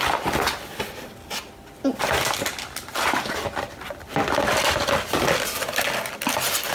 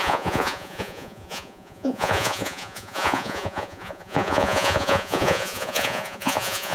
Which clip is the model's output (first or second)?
second